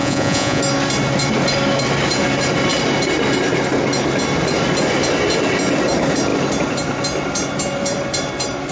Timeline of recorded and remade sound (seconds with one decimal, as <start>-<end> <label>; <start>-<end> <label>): 0.0-0.6 remade; 0.6-8.7 recorded